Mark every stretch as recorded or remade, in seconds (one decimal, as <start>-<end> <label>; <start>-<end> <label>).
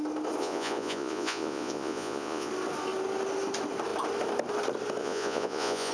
0.0-0.4 recorded; 0.4-2.5 remade; 2.5-5.0 recorded; 5.0-5.9 remade